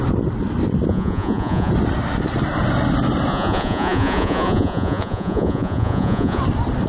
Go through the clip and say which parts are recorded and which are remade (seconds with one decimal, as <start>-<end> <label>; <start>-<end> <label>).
0.0-0.9 recorded; 0.9-1.7 remade; 1.7-3.3 recorded; 3.3-6.4 remade; 6.4-6.9 recorded